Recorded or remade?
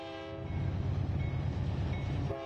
recorded